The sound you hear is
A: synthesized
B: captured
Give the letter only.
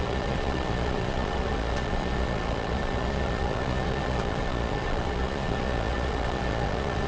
A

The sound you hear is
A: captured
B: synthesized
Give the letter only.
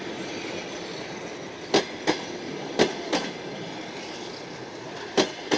A